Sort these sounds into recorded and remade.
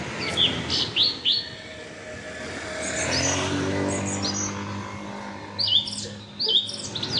recorded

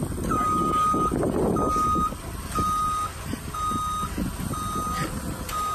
recorded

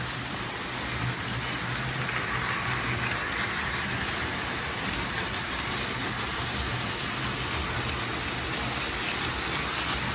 recorded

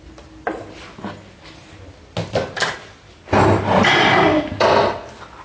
recorded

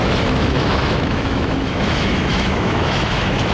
remade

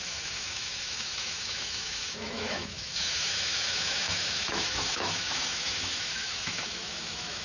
remade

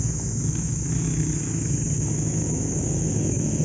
remade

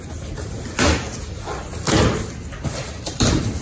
recorded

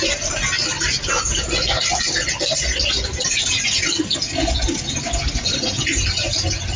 recorded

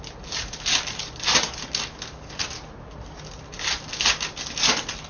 recorded